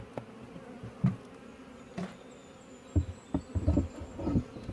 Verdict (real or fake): real